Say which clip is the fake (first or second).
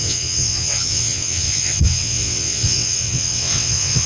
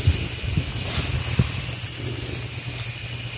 first